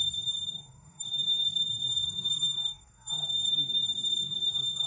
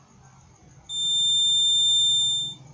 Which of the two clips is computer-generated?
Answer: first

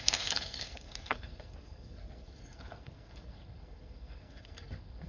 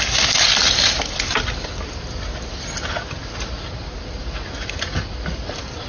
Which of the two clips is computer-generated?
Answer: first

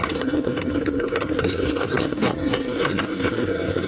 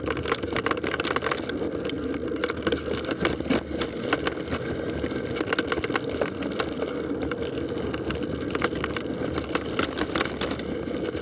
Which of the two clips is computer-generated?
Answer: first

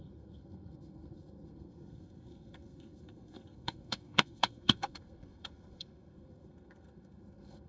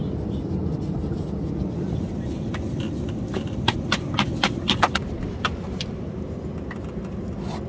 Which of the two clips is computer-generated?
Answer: first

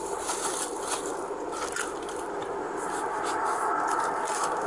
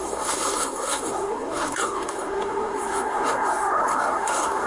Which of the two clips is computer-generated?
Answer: second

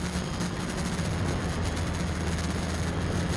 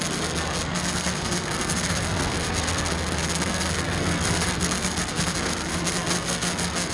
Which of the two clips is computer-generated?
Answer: second